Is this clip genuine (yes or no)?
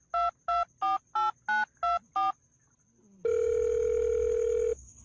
yes